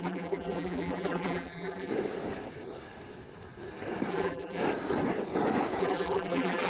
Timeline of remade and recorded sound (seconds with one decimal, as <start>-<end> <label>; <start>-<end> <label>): 0.0-1.9 remade; 1.9-4.1 recorded; 4.1-4.6 remade; 4.6-5.8 recorded; 5.8-6.7 remade